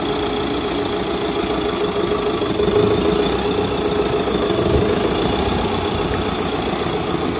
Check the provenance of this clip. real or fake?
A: real